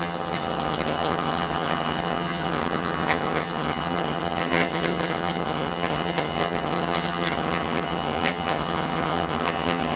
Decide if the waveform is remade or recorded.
remade